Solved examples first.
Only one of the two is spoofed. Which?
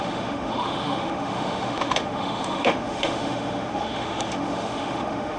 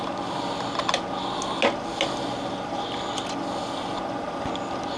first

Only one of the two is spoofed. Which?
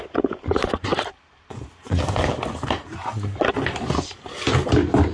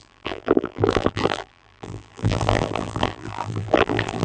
second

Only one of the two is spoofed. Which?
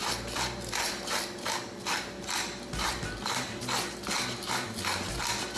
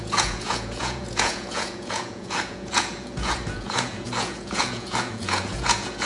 second